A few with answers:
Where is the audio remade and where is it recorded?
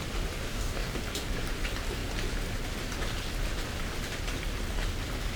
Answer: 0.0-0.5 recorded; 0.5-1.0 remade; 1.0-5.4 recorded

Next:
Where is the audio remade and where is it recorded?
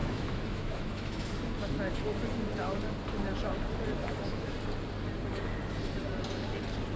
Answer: 0.0-1.3 remade; 1.3-4.0 recorded; 4.0-4.5 remade; 4.5-7.0 recorded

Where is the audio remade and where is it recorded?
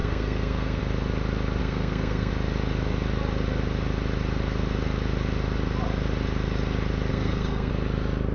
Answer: 0.0-0.8 remade; 0.8-1.6 recorded; 1.6-2.3 remade; 2.3-7.1 recorded; 7.1-7.7 remade; 7.7-8.3 recorded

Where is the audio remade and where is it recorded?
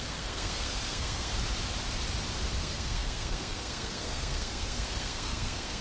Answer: 0.0-1.3 remade; 1.3-2.6 recorded; 2.6-5.8 remade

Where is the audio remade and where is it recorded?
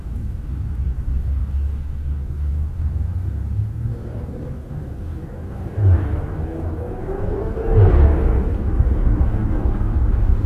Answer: 0.0-10.5 remade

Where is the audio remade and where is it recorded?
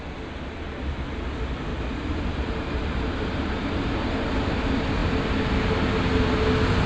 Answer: 0.0-1.7 recorded; 1.7-4.3 remade; 4.3-6.9 recorded